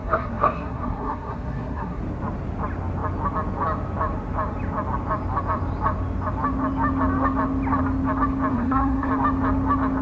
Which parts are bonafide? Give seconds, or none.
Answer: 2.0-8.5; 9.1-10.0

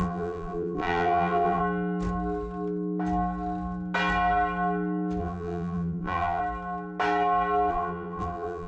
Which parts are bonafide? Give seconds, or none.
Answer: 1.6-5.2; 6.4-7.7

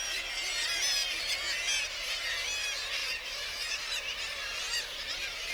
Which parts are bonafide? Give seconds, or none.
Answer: 0.0-3.0